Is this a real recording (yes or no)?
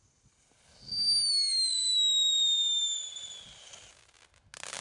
yes